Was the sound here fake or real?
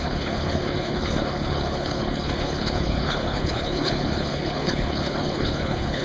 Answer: fake